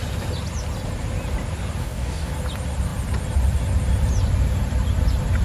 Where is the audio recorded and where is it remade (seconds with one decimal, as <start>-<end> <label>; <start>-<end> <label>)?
0.0-1.8 recorded; 1.8-2.3 remade; 2.3-5.4 recorded

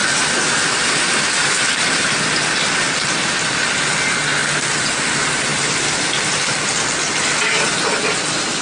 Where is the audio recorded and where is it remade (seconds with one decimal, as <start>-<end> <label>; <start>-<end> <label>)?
0.0-8.6 recorded